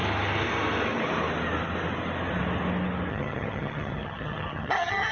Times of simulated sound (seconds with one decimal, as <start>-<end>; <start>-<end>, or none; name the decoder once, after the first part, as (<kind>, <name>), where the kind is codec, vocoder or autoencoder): 3.1-5.1 (vocoder, HiFi-GAN)